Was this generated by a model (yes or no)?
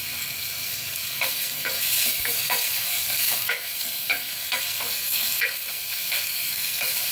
yes